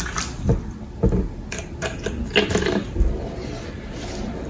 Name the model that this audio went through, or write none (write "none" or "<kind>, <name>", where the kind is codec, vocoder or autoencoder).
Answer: none